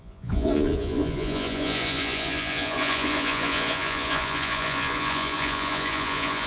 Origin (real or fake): fake